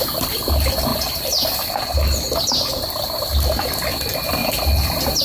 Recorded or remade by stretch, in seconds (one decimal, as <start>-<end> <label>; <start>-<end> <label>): 0.0-5.2 recorded